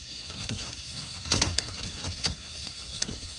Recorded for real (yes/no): no